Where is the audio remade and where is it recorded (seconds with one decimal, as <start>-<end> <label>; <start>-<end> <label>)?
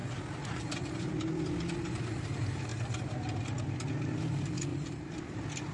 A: 0.0-2.7 recorded; 2.7-3.6 remade; 3.6-4.7 recorded; 4.7-5.2 remade; 5.2-5.7 recorded